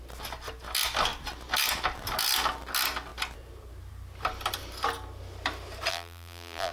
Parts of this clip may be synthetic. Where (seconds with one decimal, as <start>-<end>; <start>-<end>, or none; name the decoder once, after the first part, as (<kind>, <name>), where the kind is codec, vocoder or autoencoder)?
5.9-6.7 (vocoder, BigVGAN v2)